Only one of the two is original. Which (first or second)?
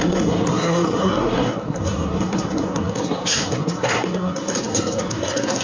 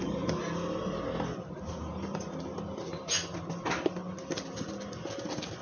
second